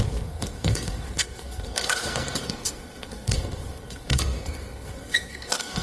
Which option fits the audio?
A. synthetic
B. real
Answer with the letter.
A